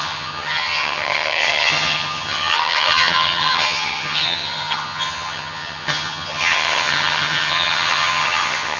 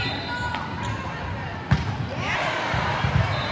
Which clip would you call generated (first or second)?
first